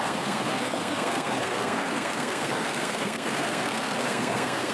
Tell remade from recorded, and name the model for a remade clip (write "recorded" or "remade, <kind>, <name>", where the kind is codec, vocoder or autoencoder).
remade, codec, SNAC